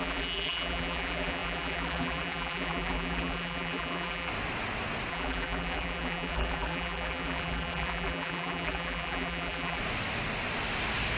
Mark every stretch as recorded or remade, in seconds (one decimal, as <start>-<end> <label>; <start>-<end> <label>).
0.0-4.3 remade; 4.3-5.1 recorded; 5.1-9.8 remade; 9.8-11.2 recorded